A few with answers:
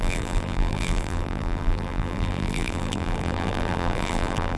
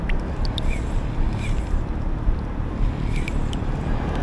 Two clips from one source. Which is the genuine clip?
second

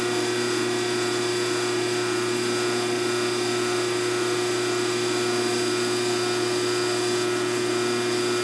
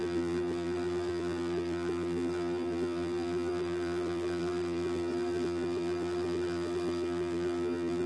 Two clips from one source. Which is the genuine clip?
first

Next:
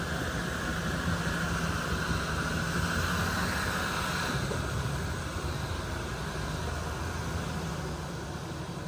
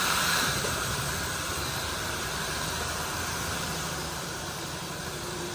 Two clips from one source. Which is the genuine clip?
first